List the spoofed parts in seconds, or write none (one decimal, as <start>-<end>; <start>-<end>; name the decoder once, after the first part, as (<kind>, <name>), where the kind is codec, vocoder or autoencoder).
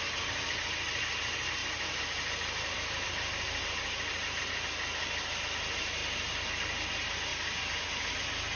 1.6-4.4 (vocoder, BigVGAN v2); 6.0-6.5